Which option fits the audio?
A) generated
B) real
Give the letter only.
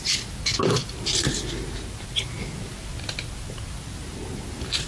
B